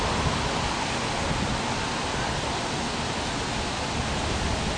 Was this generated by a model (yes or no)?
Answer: no